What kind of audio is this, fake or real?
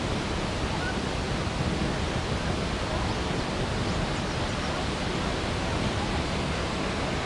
real